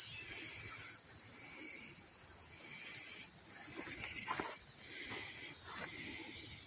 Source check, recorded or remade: recorded